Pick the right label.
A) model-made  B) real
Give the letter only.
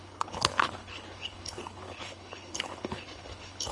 A